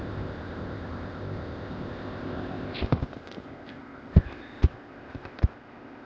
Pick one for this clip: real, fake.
fake